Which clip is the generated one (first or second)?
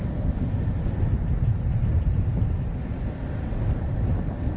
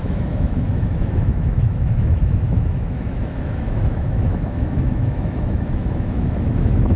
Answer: second